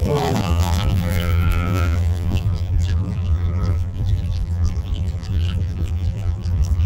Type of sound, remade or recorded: remade